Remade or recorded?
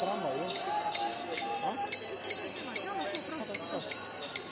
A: recorded